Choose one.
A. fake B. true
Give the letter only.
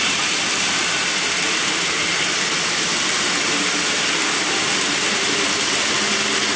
B